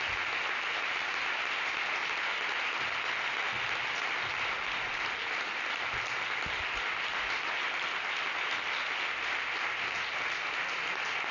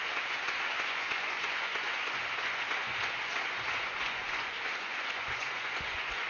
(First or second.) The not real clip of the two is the second